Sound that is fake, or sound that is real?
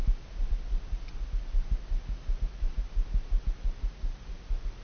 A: real